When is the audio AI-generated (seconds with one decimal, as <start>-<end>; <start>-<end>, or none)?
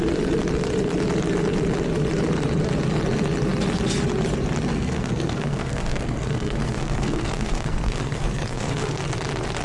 4.7-9.0